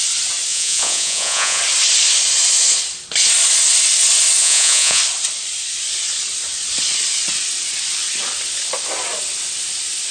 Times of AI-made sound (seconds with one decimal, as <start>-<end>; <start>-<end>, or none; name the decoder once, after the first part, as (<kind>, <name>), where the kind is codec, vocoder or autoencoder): 0.5-1.6 (vocoder, Vocos); 4.4-5.0